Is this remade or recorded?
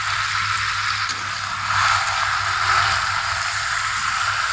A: recorded